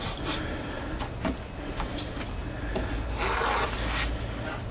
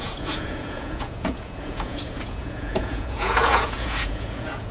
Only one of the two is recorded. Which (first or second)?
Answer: first